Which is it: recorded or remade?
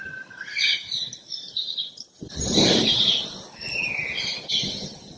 remade